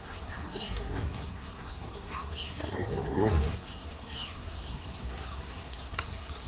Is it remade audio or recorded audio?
remade